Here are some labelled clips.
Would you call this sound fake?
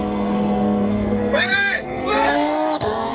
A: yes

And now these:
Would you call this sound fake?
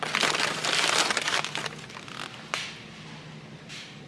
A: no